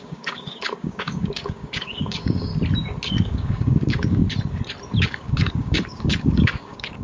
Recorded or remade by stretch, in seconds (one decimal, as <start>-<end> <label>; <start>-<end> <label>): 0.0-2.5 remade; 2.5-3.1 recorded; 3.1-4.2 remade; 4.2-5.0 recorded; 5.0-7.0 remade